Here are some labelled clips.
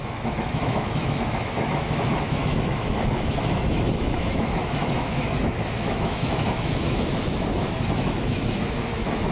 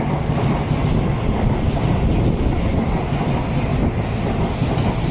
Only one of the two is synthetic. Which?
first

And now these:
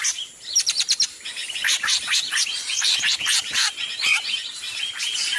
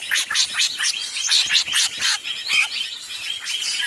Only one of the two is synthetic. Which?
first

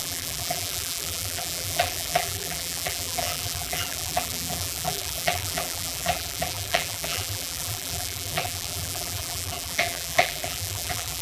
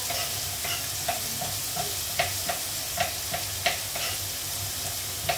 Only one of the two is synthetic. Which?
first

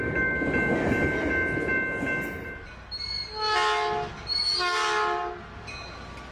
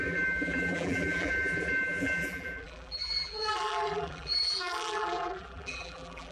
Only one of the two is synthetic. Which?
second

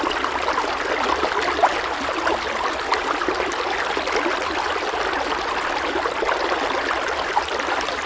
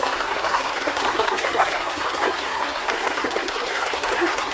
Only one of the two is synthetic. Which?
second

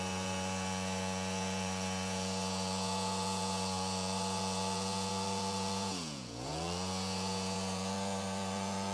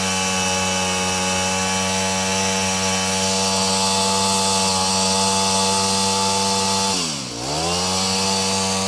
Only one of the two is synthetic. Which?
first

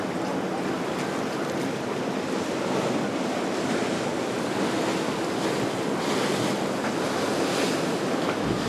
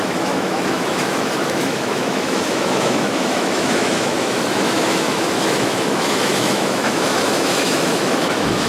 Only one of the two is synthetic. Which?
second